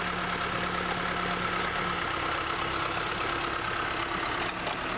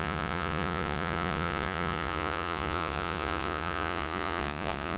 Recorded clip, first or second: first